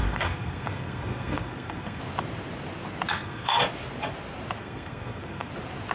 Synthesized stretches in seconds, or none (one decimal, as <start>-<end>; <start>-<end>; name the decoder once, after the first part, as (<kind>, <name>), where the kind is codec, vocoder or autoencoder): 0.0-2.0 (codec, SNAC); 3.1-3.6; 4.6-5.5